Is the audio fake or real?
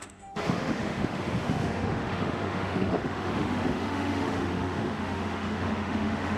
fake